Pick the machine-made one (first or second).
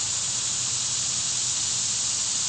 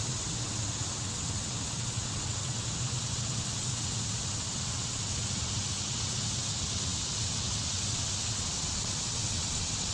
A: second